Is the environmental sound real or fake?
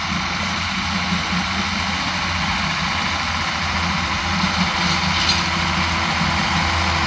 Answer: real